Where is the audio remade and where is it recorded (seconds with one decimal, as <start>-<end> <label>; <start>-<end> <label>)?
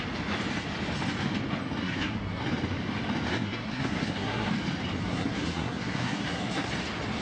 0.0-1.8 recorded; 1.8-2.4 remade; 2.4-3.3 recorded; 3.3-4.5 remade; 4.5-5.0 recorded; 5.0-6.7 remade; 6.7-7.2 recorded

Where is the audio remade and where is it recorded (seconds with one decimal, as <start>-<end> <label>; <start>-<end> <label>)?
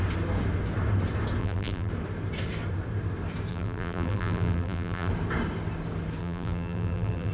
0.0-1.4 recorded; 1.4-1.9 remade; 1.9-3.5 recorded; 3.5-5.1 remade; 5.1-6.2 recorded; 6.2-7.3 remade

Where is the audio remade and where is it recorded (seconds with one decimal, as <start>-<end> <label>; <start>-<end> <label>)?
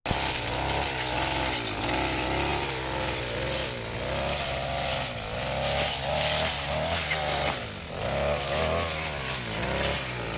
0.0-10.4 recorded